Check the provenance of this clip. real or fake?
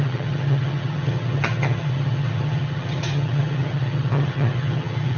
fake